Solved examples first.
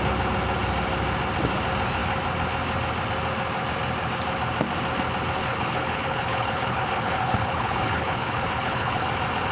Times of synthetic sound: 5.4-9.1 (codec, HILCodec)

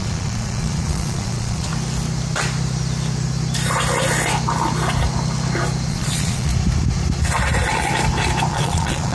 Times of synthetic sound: 0.0-1.7 (vocoder, Vocos); 5.9-6.5; 8.5-9.1

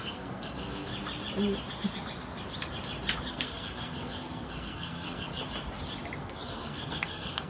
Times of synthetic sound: 0.0-0.9 (codec, SNAC); 3.3-5.4; 6.2-7.5